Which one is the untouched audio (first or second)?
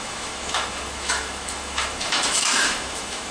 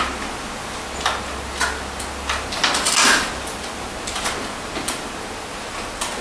second